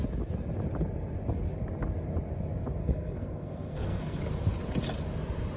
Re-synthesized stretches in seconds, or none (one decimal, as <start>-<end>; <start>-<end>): 2.8-4.2